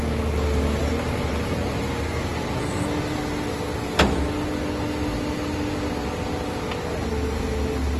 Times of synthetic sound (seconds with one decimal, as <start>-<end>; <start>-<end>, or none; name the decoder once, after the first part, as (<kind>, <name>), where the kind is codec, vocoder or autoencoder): 0.8-1.8 (vocoder, BigVGAN v2)